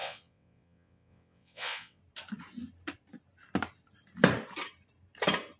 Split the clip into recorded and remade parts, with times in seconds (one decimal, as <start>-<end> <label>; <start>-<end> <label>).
0.0-2.0 remade; 2.0-5.6 recorded